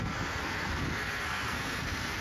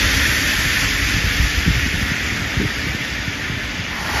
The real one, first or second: second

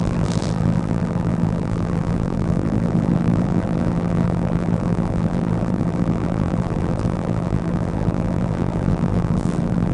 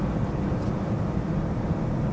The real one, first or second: second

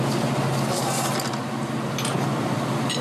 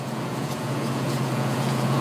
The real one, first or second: first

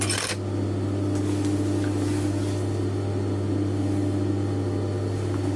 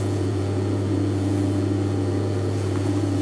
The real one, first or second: first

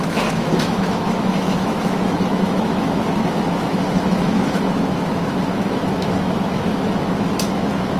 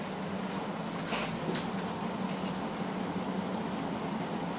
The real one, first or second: second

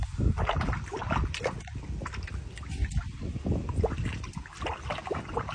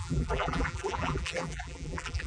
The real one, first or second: first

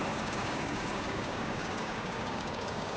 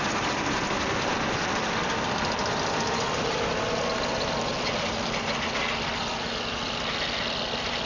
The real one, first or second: second